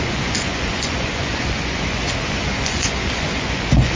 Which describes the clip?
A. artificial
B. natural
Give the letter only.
A